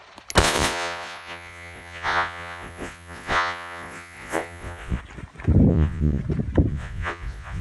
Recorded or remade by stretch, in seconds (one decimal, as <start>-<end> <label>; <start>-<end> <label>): 0.0-0.4 recorded; 0.4-5.0 remade; 5.0-5.7 recorded; 5.7-6.2 remade; 6.2-6.7 recorded; 6.7-7.6 remade